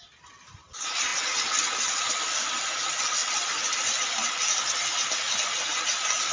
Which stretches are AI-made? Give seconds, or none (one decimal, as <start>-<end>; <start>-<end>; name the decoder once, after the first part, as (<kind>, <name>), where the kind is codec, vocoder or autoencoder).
none